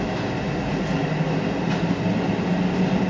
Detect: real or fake real